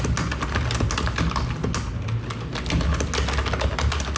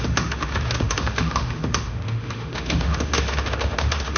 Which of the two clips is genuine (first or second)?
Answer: first